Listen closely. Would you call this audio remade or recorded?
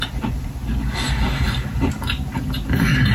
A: recorded